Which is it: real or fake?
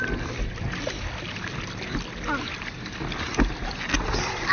real